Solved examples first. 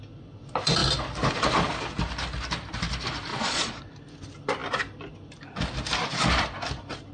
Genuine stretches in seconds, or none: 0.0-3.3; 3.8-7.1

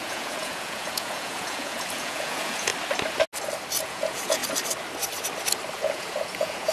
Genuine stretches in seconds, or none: 2.7-3.8; 4.4-5.7

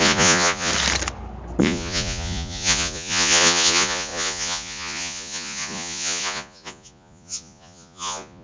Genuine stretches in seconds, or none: 0.7-1.6

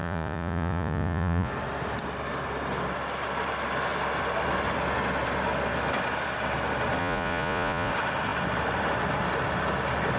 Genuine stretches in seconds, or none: 1.5-7.0; 7.9-10.2

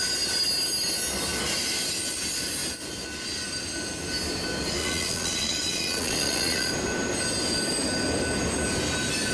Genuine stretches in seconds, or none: 0.0-4.8; 6.7-9.3

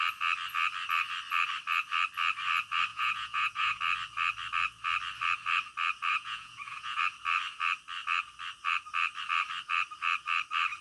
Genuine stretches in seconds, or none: 0.0-2.9; 3.8-6.1; 7.0-10.8

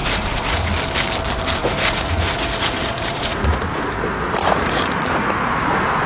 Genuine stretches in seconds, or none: 0.7-1.6; 3.6-4.4; 5.5-6.1